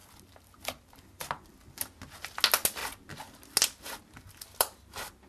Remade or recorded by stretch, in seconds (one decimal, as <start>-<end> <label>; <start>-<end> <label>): 0.0-5.3 recorded